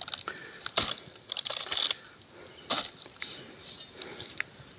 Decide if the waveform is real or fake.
real